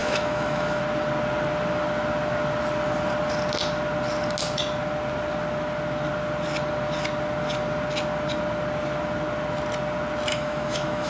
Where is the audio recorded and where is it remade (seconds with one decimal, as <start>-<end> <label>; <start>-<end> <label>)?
0.0-0.8 remade; 0.8-10.3 recorded; 10.3-11.1 remade